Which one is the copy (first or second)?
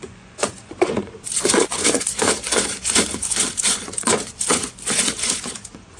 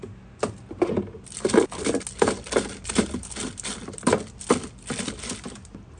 first